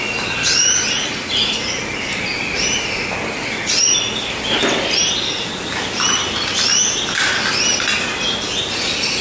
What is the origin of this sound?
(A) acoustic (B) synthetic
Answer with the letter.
A